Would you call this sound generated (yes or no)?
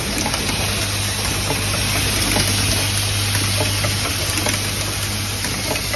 no